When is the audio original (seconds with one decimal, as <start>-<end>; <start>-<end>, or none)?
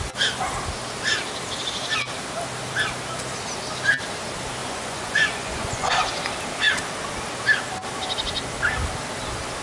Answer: 0.0-4.6; 5.9-9.6